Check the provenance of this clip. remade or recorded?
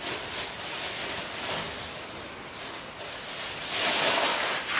recorded